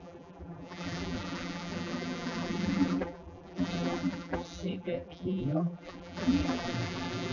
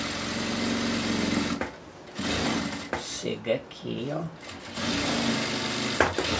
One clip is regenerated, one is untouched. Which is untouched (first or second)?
second